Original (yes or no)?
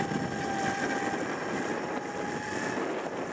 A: yes